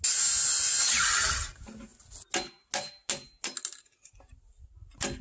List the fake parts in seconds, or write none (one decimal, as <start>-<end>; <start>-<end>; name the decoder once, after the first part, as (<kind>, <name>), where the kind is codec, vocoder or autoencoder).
none